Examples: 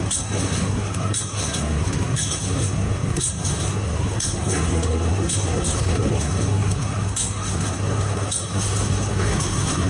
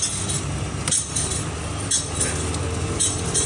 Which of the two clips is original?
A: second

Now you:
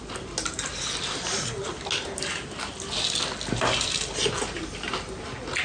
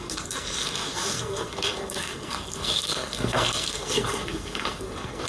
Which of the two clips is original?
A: first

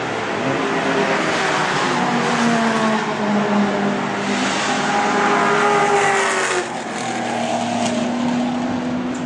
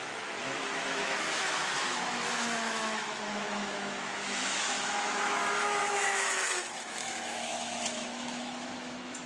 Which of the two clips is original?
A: first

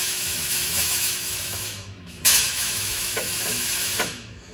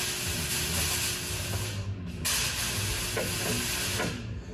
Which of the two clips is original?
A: second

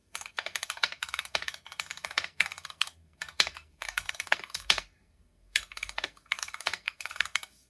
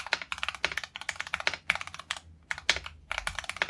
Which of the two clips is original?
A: second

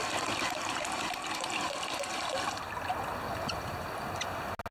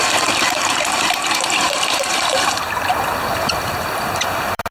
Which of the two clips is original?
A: first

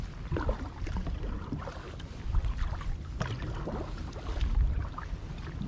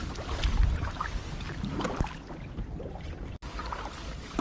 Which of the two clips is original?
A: first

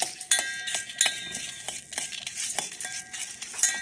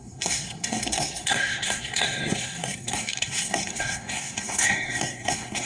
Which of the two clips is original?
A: first